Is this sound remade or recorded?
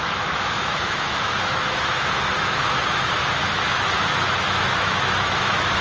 remade